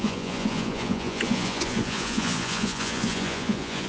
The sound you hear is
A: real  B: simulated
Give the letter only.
B